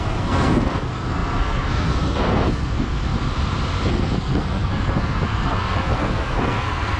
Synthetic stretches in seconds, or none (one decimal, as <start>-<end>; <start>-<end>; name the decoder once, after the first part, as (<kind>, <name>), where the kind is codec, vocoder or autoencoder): 0.0-3.1 (codec, SNAC); 3.9-7.0